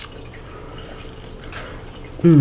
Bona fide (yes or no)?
no